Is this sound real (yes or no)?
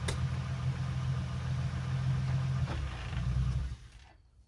yes